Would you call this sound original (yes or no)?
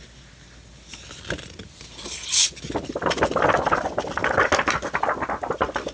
yes